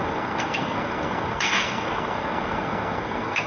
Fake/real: fake